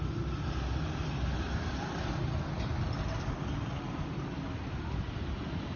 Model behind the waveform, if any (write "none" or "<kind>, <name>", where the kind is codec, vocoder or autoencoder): none